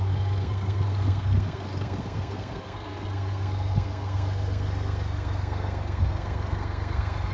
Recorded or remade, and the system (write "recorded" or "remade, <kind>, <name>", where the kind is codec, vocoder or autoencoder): remade, codec, SNAC